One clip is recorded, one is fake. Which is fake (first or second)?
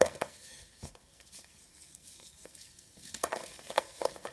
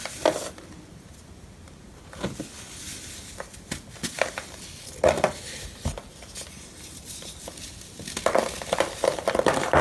first